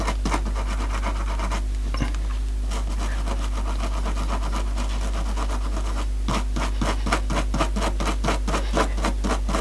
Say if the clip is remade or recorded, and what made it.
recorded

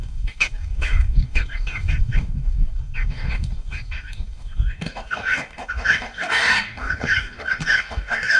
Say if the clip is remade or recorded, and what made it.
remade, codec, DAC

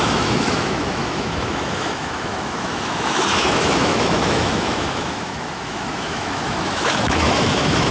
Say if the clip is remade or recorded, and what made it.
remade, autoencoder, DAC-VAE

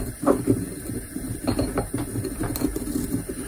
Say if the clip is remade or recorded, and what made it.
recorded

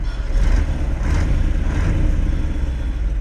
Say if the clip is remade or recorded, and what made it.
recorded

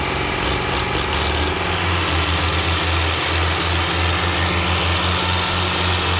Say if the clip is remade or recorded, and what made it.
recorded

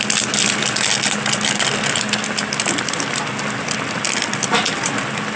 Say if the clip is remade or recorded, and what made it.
recorded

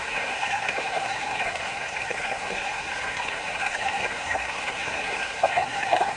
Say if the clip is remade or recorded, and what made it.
remade, codec, SNAC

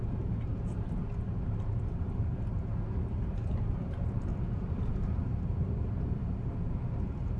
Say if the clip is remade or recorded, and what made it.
remade, vocoder, BigVGAN v2